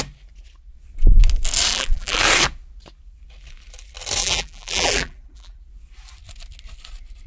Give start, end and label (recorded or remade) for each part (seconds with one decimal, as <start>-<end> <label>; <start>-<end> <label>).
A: 0.0-1.7 recorded; 1.7-2.2 remade; 2.2-4.2 recorded; 4.2-5.6 remade; 5.6-7.3 recorded